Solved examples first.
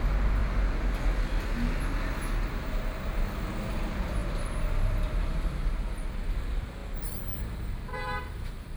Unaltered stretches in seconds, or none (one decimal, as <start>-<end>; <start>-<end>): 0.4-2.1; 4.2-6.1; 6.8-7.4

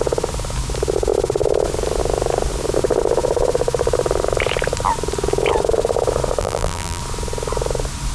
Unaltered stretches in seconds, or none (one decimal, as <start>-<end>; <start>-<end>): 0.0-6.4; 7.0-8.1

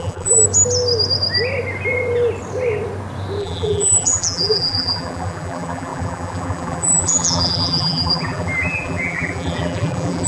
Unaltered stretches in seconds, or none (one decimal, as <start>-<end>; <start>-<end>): 0.4-3.4

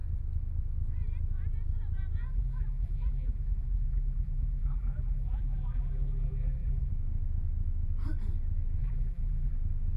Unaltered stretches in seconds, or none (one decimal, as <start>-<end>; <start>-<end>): 0.0-2.2; 6.9-8.8; 9.5-10.0

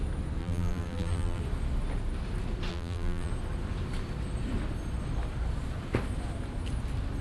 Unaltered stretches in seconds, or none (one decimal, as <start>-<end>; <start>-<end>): 0.0-0.4; 1.4-2.7; 3.3-7.2